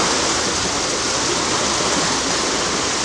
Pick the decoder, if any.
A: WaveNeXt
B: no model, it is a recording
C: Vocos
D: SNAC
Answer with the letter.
B